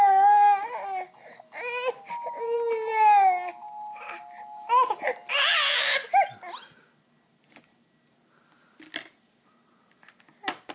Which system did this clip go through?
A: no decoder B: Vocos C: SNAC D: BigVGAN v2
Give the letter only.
A